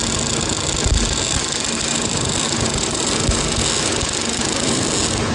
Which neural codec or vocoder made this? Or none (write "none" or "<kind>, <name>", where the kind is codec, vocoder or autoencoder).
none